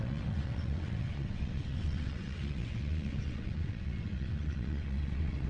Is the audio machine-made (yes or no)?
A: yes